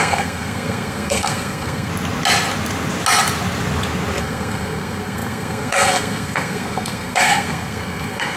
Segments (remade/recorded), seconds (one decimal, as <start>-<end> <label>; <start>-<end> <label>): 0.0-1.9 remade; 1.9-4.2 recorded; 4.2-8.4 remade